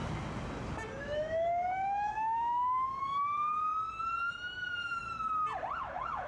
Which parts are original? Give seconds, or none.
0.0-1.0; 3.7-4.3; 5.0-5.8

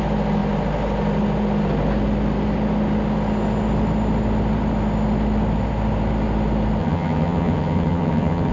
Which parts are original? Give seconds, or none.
0.0-6.8

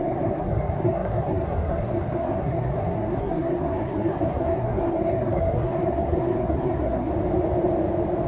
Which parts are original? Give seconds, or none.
7.1-8.3

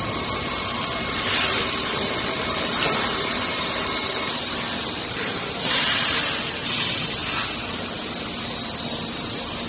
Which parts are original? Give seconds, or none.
7.2-9.7

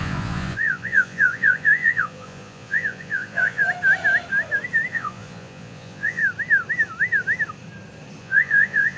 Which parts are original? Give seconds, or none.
3.6-4.9; 6.2-8.2

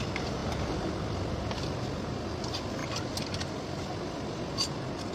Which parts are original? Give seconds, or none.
0.0-5.1